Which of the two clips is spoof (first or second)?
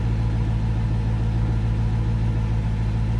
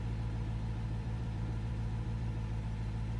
second